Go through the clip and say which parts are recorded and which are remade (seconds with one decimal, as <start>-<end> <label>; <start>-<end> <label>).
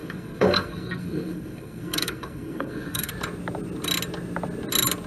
0.0-3.1 remade; 3.1-5.1 recorded